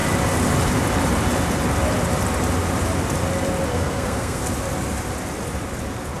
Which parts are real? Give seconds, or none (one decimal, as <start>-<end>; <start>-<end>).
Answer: 0.0-3.7; 4.4-6.2